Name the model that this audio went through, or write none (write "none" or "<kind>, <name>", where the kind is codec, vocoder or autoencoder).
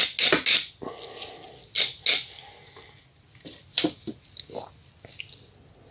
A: none